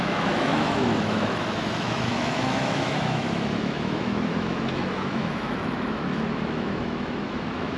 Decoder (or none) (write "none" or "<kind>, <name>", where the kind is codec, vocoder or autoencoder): autoencoder, DAC-VAE